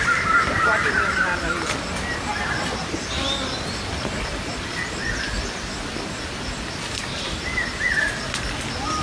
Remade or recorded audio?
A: recorded